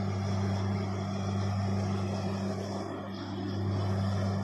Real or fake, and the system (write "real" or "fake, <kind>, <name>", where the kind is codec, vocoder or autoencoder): real